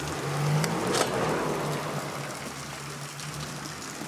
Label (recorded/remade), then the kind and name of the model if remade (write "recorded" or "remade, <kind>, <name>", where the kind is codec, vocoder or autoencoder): recorded